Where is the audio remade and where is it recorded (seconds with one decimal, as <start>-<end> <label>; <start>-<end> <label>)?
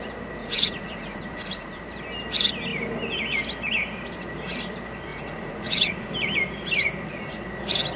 0.0-0.4 recorded; 0.4-1.8 remade; 1.8-5.1 recorded; 5.1-6.1 remade; 6.1-8.0 recorded